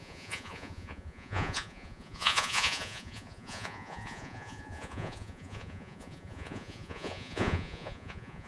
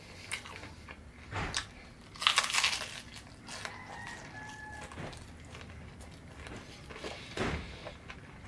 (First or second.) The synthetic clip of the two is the first